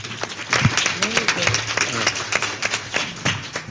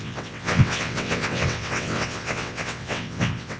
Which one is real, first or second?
first